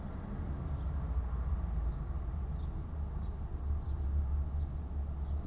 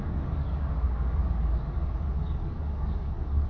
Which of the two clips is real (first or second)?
first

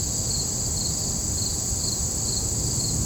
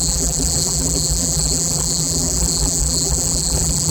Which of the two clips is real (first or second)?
first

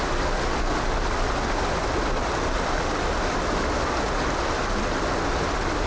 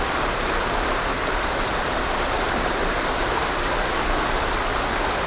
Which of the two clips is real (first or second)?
first